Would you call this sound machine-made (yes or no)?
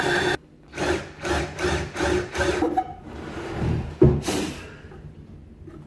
no